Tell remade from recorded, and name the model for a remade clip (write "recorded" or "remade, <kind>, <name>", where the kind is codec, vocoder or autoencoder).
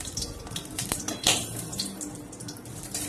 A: remade, vocoder, BigVGAN v2